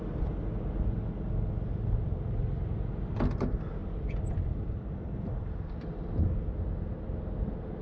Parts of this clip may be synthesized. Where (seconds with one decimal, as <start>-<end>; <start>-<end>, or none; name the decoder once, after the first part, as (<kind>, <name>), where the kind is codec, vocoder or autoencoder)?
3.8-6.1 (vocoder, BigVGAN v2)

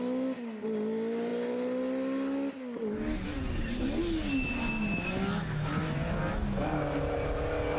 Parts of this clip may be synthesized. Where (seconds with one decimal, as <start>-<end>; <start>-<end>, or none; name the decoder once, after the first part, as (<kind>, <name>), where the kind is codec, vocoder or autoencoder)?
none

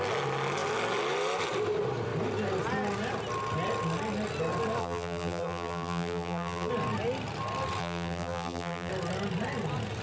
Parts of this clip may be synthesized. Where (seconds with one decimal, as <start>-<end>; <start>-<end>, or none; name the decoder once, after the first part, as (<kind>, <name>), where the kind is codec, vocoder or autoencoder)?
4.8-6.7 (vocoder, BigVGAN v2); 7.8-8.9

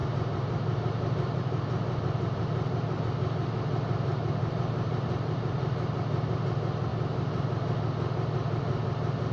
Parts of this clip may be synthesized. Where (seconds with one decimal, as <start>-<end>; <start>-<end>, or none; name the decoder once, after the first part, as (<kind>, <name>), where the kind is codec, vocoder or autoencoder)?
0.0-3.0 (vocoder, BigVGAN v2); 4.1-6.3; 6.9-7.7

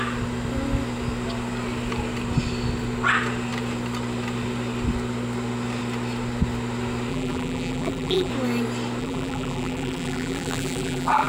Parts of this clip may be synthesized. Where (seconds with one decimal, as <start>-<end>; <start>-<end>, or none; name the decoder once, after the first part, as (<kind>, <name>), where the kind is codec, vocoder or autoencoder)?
7.1-8.3 (vocoder, BigVGAN v2); 9.0-11.3

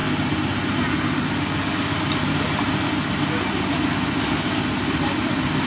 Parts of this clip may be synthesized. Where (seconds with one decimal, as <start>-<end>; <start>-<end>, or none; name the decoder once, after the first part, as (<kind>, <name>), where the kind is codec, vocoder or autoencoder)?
none

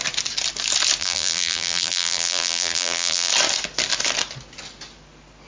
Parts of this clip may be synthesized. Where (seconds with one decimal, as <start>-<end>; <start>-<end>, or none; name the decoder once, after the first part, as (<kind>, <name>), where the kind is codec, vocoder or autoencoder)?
1.0-3.3 (vocoder, BigVGAN v2)